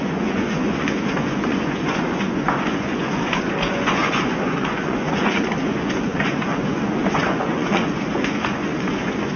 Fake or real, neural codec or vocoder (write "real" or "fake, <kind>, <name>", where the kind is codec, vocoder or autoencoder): fake, vocoder, Vocos